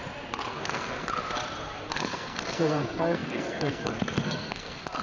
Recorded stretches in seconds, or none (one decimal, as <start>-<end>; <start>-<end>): 0.0-0.5; 1.1-1.9